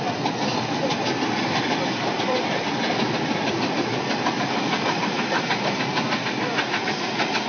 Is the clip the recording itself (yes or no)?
no